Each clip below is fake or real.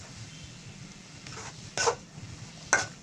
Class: real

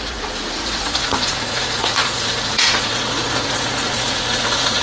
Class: fake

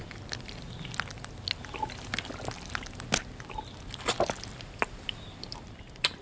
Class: real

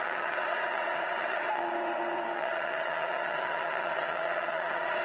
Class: fake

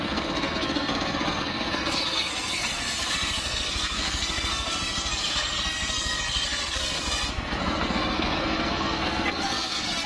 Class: fake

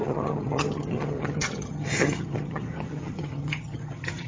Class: fake